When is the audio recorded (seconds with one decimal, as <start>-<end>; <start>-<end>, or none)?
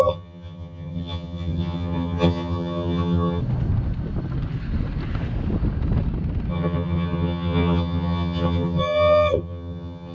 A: 3.4-6.5